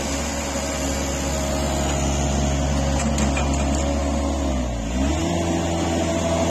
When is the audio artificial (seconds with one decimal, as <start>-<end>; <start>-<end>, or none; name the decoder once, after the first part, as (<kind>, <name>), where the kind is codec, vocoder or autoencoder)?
none